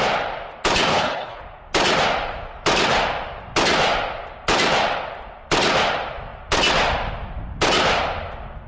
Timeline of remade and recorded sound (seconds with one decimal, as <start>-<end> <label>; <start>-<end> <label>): 0.0-0.9 recorded; 0.9-1.4 remade; 1.4-8.7 recorded